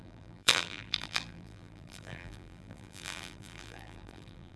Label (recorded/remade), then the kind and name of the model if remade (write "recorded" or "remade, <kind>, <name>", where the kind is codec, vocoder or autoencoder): remade, vocoder, BigVGAN v2